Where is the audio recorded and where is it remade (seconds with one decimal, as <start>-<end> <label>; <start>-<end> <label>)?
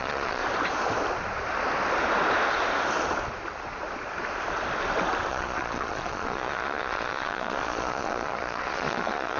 0.0-0.4 remade; 0.4-5.3 recorded; 5.3-9.4 remade